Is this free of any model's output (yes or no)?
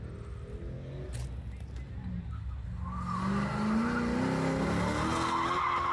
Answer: yes